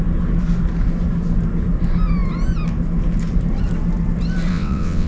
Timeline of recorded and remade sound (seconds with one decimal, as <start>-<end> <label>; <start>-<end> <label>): 0.0-4.5 recorded; 4.5-5.1 remade